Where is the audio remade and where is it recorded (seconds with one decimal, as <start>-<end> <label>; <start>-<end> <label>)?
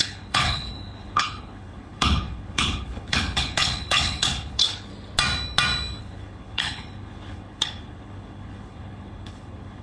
0.0-4.9 remade; 4.9-6.0 recorded; 6.0-9.8 remade